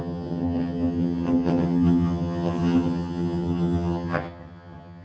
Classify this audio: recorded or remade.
remade